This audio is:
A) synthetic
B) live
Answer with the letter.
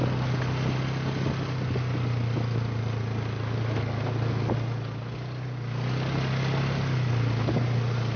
B